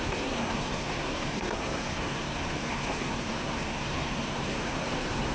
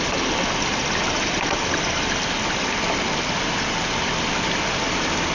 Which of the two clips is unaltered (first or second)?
second